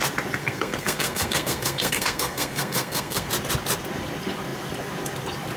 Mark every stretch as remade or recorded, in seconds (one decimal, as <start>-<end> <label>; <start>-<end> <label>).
0.0-0.4 recorded; 0.4-3.3 remade; 3.3-5.6 recorded